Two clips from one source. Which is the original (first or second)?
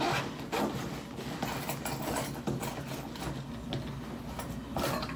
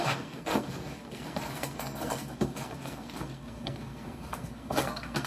first